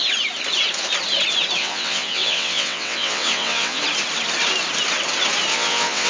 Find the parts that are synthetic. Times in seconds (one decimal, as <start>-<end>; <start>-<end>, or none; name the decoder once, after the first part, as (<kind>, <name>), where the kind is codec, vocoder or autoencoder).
1.6-3.8 (vocoder, WaveNeXt); 5.5-6.1